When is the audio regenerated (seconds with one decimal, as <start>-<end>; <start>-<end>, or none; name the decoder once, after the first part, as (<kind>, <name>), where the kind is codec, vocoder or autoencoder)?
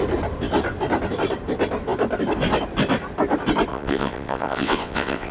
3.7-5.3 (vocoder, WaveNeXt)